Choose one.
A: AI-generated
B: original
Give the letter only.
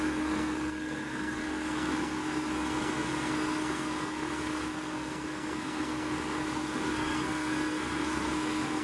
A